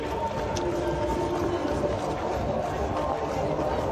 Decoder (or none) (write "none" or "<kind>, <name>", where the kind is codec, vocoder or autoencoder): none